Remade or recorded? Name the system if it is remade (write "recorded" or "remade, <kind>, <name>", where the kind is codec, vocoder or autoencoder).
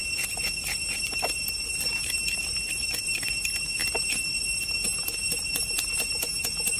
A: recorded